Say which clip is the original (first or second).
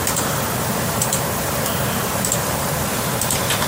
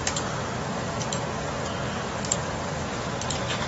second